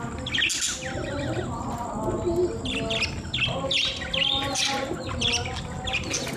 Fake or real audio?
real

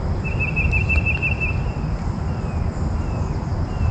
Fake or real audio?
real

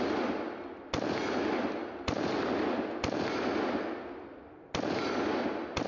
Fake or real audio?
real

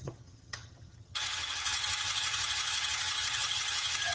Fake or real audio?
fake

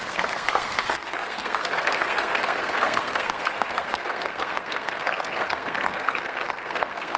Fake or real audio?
fake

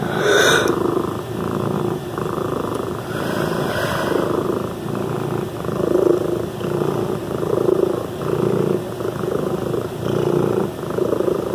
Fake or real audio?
real